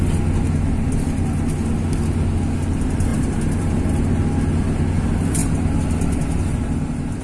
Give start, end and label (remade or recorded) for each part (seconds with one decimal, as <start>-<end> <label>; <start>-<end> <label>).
0.0-3.1 recorded; 3.1-4.0 remade; 4.0-5.4 recorded; 5.4-7.2 remade